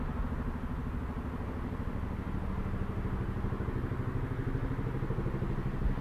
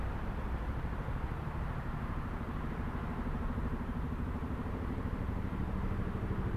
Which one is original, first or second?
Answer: first